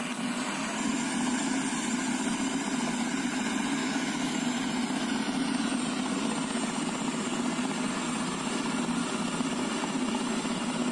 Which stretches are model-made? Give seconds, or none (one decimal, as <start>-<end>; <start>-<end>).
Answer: 3.8-4.4